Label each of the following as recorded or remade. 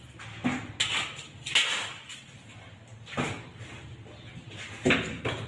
recorded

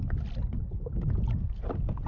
recorded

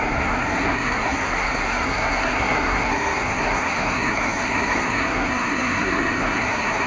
remade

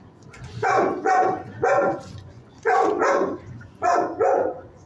remade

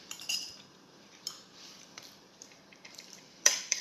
remade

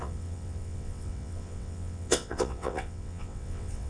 remade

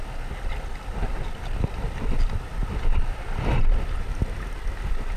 recorded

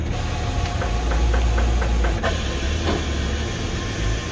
recorded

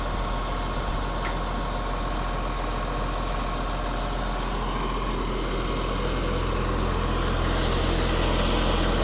recorded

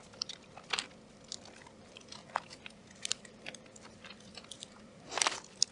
recorded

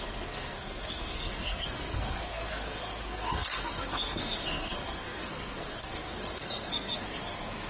remade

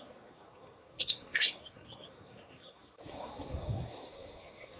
remade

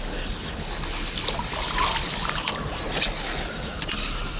recorded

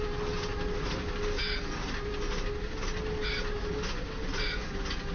recorded